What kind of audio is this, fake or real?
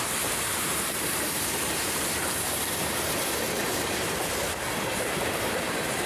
fake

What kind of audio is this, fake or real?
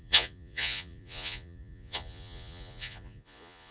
fake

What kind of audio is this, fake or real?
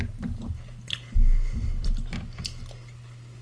real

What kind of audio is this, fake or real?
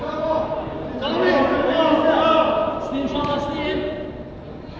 real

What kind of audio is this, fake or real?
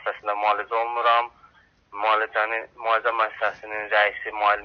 real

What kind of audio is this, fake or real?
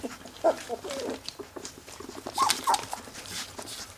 fake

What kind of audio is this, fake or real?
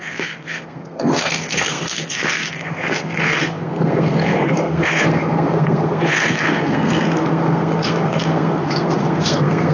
fake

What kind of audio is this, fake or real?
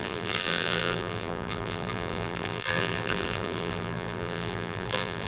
fake